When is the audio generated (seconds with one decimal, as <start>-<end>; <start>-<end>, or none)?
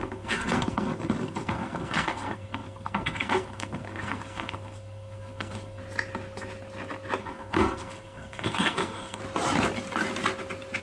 0.0-5.8; 7.2-9.2